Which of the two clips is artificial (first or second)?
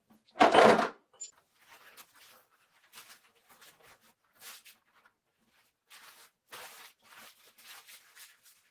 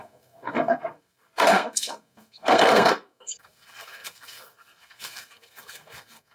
second